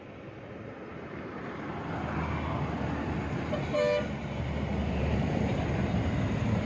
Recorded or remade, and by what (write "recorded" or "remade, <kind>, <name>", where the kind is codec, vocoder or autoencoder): recorded